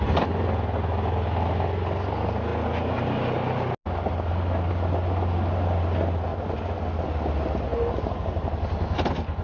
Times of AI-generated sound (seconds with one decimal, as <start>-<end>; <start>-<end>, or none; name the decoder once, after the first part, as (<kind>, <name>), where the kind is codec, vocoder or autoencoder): none